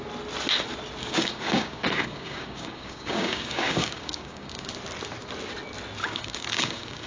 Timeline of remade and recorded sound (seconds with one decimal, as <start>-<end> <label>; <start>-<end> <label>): 0.0-1.0 recorded; 1.0-4.7 remade; 4.7-6.0 recorded; 6.0-7.1 remade